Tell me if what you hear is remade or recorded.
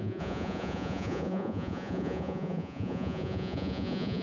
remade